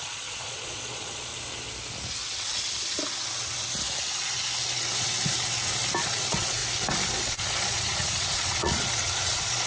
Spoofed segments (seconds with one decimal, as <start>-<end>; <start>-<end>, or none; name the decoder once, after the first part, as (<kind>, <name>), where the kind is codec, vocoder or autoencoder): 0.0-1.3 (vocoder, Vocos); 6.0-6.6; 7.3-9.7